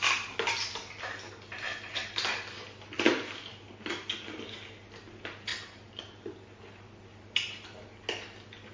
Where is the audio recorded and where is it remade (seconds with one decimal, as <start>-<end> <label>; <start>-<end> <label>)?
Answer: 0.0-8.7 recorded